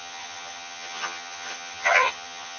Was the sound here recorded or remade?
remade